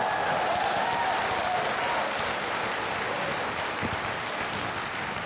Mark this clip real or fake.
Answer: real